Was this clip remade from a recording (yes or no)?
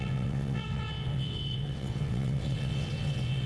yes